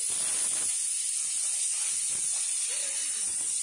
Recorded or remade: recorded